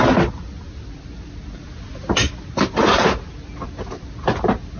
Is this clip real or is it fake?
real